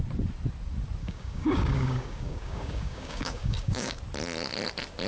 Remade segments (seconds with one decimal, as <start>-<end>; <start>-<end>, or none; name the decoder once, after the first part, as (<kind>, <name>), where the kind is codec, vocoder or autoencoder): 1.0-4.0 (codec, DAC)